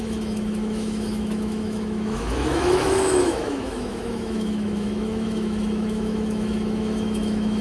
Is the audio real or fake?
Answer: fake